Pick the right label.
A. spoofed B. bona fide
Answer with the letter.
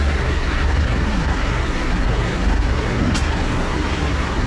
A